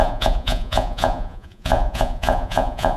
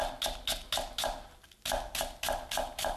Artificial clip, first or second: first